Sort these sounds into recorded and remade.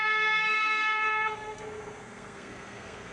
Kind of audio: remade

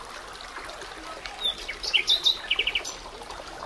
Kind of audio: recorded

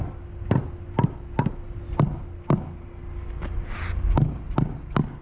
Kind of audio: recorded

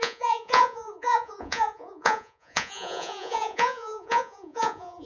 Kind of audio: remade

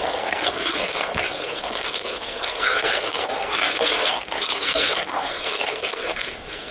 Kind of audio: remade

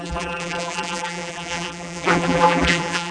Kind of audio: remade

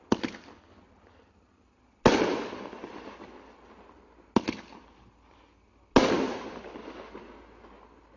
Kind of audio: recorded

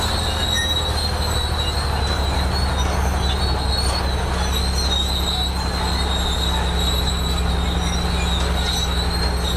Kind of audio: recorded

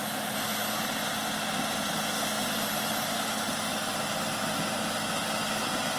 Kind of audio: recorded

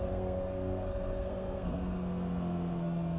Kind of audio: remade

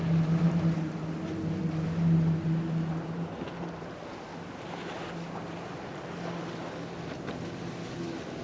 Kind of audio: recorded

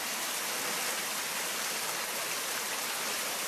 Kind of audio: remade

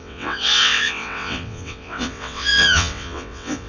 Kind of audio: remade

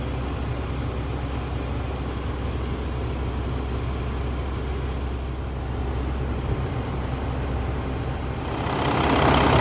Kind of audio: recorded